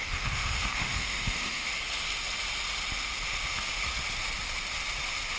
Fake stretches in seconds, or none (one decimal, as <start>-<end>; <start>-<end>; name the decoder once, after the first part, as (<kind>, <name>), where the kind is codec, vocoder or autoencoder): 0.0-1.7 (autoencoder, DAC-VAE)